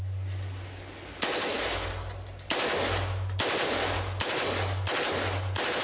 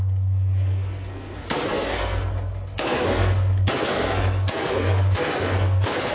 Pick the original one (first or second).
first